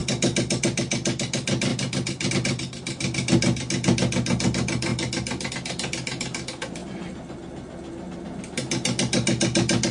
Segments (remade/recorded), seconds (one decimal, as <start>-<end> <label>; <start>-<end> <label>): 0.0-9.9 recorded